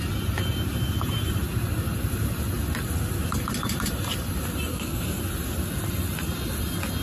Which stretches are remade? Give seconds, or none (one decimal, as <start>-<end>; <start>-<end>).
4.7-5.2